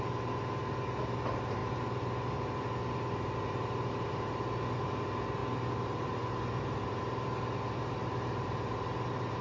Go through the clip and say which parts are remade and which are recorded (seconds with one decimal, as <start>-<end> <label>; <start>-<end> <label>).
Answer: 0.0-9.4 recorded